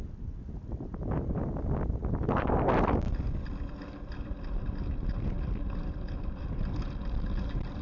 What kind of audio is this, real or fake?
real